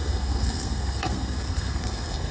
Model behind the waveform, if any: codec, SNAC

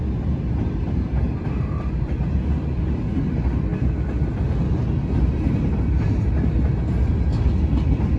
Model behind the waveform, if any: none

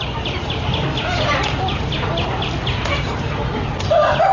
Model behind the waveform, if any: none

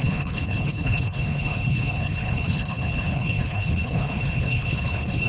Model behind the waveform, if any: codec, HILCodec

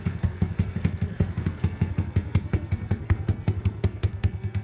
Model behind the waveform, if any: codec, SNAC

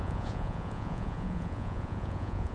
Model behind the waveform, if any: vocoder, Vocos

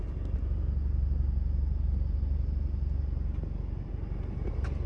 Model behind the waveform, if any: none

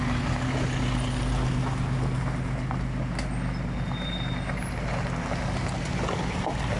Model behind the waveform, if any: none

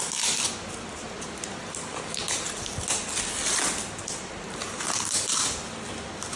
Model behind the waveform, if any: none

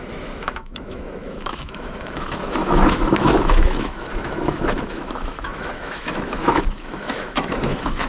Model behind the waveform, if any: autoencoder, DAC-VAE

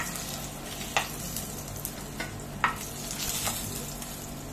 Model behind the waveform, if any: none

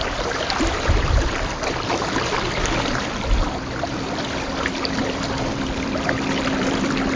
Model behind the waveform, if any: vocoder, BigVGAN v2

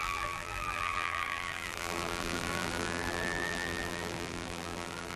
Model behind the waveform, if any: vocoder, BigVGAN v2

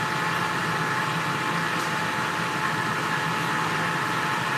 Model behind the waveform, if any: none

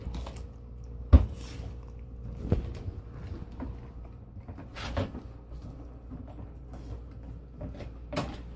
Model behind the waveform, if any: none